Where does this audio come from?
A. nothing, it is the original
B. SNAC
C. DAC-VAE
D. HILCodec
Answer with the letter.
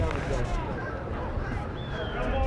A